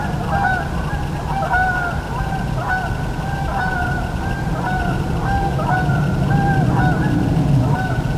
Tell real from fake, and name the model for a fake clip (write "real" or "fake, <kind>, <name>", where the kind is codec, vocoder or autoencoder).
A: real